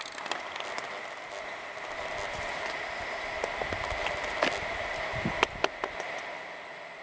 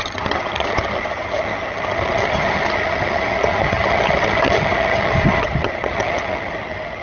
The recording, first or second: first